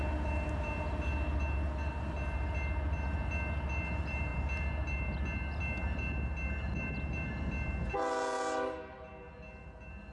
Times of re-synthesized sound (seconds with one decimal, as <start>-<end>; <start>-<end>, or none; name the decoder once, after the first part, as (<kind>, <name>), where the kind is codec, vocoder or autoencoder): none

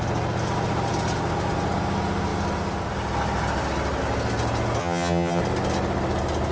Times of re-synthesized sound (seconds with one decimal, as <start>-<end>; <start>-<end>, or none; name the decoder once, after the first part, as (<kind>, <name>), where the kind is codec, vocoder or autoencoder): 4.8-5.4 (vocoder, HiFi-GAN)